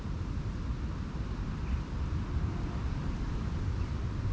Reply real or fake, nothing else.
real